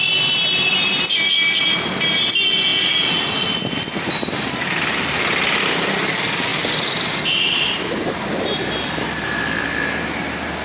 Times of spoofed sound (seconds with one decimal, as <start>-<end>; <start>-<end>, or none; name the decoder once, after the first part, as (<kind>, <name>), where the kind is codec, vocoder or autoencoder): none